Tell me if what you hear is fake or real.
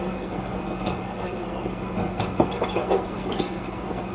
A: fake